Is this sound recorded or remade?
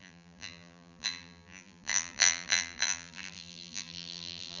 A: remade